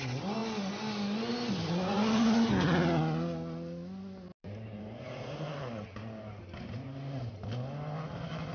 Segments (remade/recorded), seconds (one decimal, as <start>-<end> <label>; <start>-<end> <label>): 0.0-4.3 recorded; 4.3-5.6 remade; 5.6-8.5 recorded